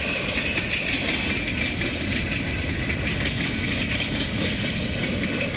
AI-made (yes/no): no